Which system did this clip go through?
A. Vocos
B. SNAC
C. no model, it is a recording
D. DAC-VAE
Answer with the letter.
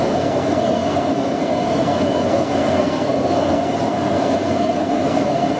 B